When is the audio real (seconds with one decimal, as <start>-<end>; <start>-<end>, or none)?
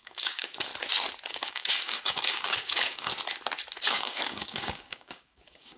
0.7-1.3; 3.1-3.8